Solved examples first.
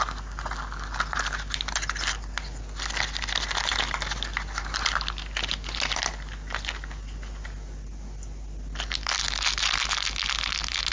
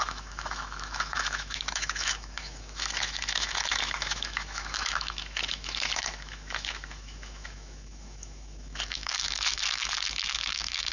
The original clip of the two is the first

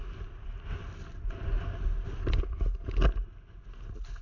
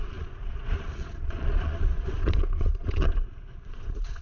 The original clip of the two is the first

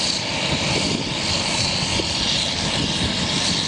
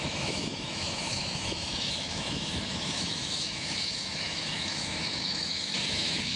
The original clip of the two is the first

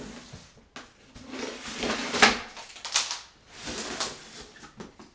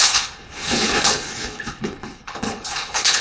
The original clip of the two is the first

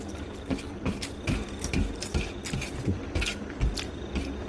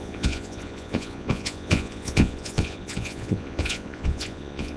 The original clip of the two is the first